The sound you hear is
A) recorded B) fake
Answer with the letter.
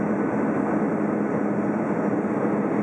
A